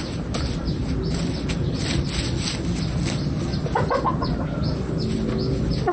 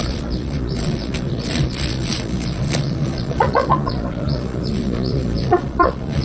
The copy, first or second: second